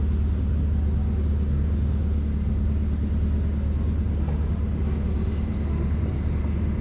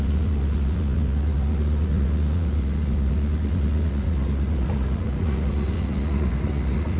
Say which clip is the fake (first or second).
second